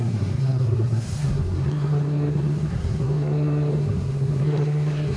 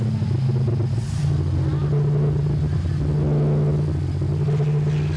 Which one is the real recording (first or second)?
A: second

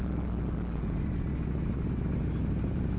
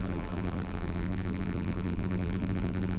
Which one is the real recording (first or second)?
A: first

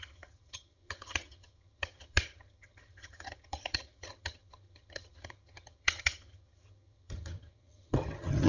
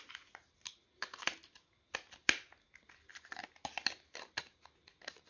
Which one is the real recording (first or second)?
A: second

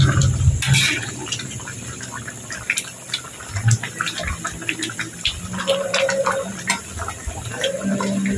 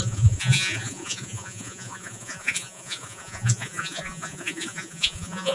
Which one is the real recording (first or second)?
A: first